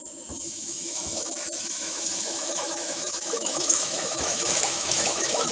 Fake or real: fake